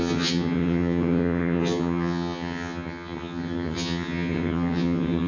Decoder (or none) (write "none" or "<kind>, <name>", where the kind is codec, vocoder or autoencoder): vocoder, HiFi-GAN